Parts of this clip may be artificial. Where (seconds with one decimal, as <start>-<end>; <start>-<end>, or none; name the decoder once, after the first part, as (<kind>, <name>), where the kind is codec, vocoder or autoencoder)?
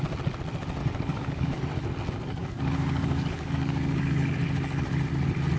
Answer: 0.8-1.6 (codec, DAC); 2.4-4.4